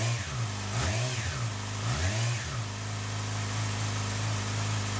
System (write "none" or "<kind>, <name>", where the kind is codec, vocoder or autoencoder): none